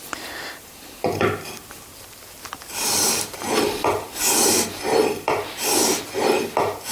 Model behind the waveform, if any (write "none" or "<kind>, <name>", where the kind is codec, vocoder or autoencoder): vocoder, BigVGAN v2